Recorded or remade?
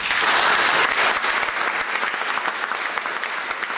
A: recorded